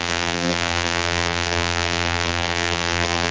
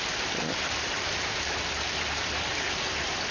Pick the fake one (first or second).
first